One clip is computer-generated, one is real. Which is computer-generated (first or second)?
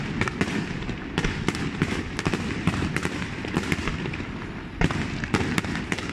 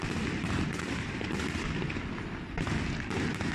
first